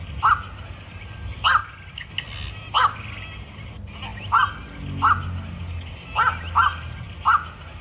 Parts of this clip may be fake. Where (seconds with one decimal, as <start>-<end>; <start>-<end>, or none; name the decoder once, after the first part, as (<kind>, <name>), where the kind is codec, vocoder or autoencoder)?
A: none